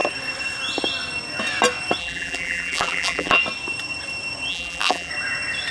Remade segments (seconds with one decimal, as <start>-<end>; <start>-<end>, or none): 2.0-3.4; 4.5-5.1